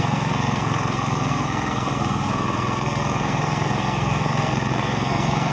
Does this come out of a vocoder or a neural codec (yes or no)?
yes